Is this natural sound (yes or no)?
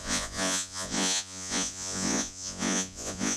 no